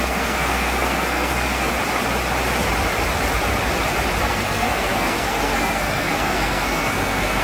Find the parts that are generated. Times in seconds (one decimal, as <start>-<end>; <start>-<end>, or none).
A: 0.0-1.7; 4.2-7.4